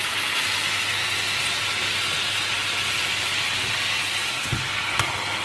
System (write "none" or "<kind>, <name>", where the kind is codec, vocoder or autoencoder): none